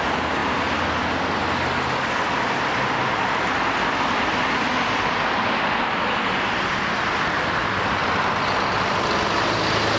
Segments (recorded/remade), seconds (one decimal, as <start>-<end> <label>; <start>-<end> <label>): 0.0-10.0 recorded